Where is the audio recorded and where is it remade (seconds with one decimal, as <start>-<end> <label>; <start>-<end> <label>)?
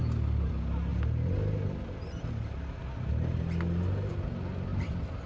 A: 0.0-5.3 recorded